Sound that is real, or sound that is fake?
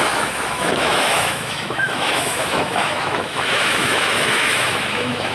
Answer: fake